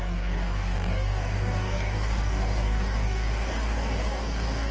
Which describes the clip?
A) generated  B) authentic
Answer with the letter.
A